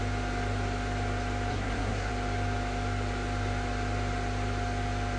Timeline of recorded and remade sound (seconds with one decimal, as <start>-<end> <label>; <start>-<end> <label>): 0.0-1.5 recorded; 1.5-2.1 remade; 2.1-5.2 recorded